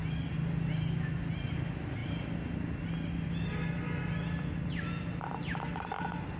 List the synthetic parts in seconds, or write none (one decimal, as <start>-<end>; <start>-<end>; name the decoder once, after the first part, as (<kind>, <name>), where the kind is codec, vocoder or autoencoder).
none